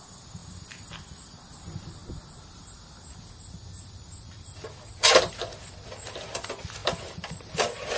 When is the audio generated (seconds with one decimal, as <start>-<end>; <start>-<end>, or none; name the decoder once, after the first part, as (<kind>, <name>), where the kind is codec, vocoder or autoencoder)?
0.0-2.0 (vocoder, BigVGAN v2); 2.5-8.0